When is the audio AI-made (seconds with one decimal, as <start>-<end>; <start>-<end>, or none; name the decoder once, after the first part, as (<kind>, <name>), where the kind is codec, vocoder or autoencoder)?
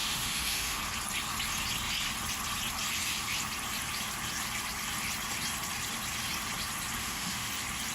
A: 0.0-0.8 (autoencoder, DAC-VAE); 7.0-7.5